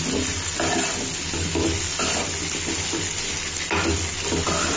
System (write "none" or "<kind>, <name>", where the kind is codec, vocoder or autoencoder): none